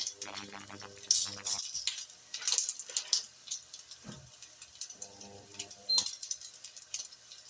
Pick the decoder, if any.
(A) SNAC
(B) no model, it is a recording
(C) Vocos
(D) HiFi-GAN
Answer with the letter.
B